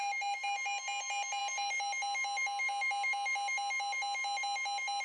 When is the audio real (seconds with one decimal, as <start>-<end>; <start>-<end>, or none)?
0.0-5.0